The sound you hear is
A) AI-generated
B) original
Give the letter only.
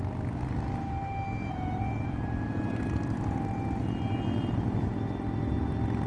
B